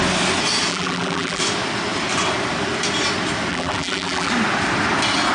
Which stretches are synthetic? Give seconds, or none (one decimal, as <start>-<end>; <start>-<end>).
0.7-1.4; 3.5-4.3